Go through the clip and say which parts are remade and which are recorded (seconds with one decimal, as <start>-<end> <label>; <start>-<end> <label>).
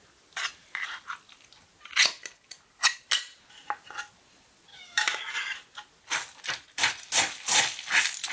0.0-4.7 recorded; 4.7-5.2 remade; 5.2-8.3 recorded